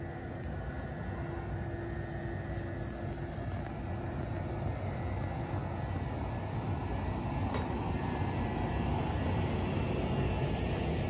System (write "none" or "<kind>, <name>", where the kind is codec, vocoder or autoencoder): none